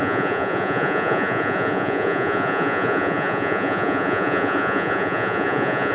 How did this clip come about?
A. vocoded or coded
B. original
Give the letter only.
A